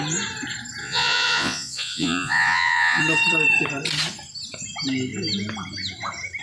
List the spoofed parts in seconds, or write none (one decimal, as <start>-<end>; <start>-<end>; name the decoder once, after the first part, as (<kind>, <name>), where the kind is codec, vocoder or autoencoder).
0.8-3.0 (vocoder, Vocos)